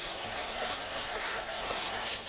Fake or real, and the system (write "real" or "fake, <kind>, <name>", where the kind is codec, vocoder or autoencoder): fake, codec, SNAC